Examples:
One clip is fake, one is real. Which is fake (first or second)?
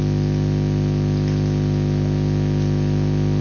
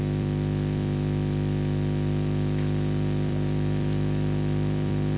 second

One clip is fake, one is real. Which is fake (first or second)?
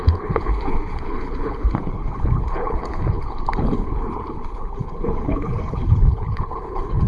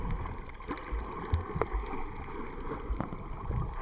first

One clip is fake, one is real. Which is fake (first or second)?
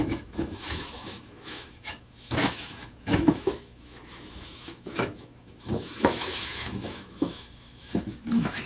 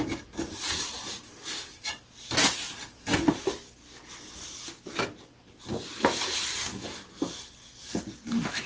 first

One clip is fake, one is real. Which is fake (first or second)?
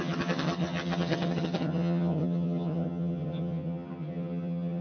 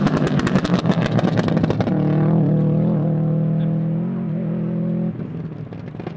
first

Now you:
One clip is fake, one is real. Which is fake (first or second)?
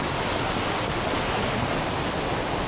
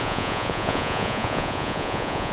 second